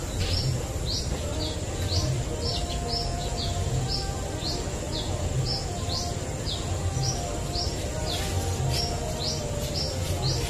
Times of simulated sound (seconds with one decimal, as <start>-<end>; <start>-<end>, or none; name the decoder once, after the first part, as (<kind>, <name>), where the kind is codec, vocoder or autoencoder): 3.1-3.9 (vocoder, Vocos); 4.7-5.8